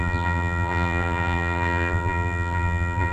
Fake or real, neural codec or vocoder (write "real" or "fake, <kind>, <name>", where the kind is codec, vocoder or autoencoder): fake, vocoder, BigVGAN v2